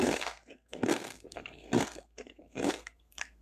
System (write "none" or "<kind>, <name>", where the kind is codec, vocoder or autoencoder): codec, SNAC